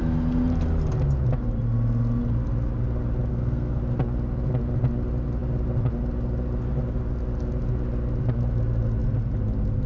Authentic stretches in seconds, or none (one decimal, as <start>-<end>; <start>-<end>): 0.0-3.3; 3.8-9.9

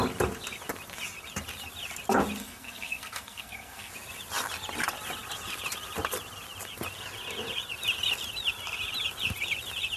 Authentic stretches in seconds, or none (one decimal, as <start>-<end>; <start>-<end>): 0.0-2.4; 3.9-10.0